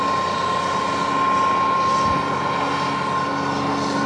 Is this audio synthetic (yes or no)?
no